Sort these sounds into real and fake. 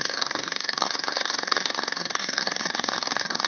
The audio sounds fake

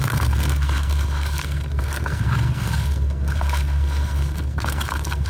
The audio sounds fake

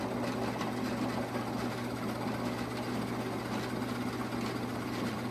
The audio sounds real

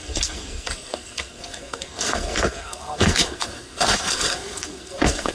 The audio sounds fake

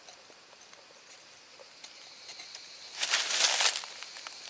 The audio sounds real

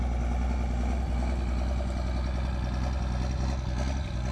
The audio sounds real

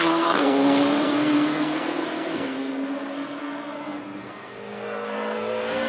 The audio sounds fake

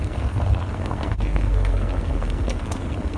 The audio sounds fake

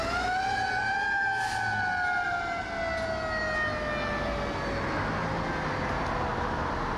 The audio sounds real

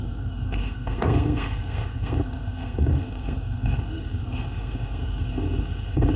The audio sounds fake